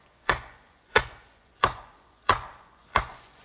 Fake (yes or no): yes